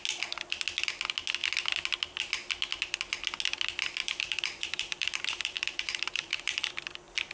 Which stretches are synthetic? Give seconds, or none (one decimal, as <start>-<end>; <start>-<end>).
4.0-6.7